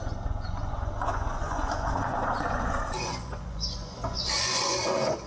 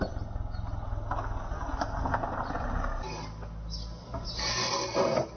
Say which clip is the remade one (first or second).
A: first